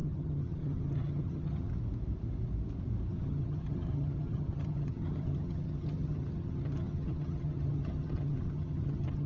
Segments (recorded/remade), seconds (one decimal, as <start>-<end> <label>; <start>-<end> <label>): 0.0-1.7 remade; 1.7-3.1 recorded; 3.1-9.3 remade